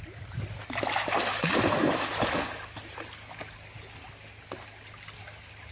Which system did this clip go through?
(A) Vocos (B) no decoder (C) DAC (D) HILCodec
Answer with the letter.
B